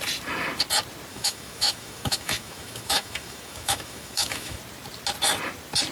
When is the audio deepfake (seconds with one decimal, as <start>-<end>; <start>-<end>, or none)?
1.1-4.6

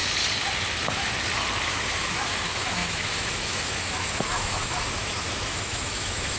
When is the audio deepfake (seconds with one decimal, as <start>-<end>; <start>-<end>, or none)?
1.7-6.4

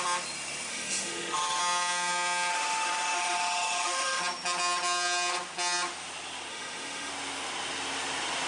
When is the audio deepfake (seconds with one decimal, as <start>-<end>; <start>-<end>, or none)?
0.7-1.6; 2.5-4.2; 6.5-7.1

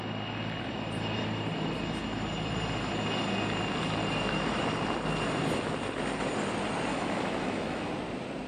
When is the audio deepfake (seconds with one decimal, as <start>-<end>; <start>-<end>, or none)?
6.9-7.9